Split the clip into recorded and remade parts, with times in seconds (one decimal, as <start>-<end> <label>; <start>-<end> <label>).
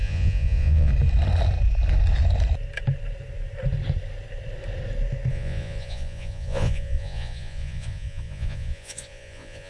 0.0-0.9 remade; 0.9-5.3 recorded; 5.3-9.7 remade